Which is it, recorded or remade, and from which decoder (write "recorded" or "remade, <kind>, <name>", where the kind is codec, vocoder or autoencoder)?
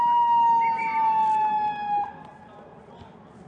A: recorded